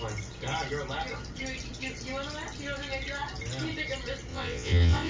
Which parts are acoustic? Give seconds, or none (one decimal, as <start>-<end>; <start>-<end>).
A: 0.0-4.3